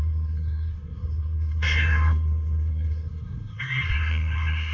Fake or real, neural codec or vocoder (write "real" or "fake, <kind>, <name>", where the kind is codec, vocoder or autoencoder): fake, codec, SNAC